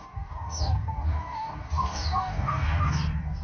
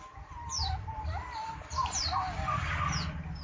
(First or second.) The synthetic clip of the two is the first